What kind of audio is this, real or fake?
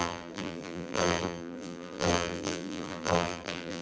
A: fake